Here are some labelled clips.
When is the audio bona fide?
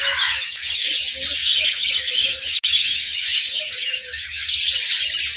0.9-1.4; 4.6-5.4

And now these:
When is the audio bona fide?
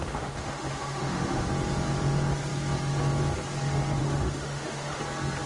1.5-4.0; 5.0-5.5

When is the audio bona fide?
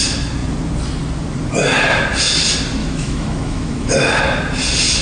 0.0-2.8; 4.2-5.0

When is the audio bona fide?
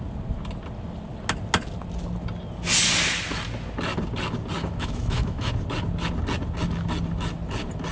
0.0-4.6; 5.5-7.9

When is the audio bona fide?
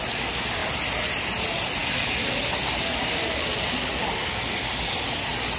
0.0-5.6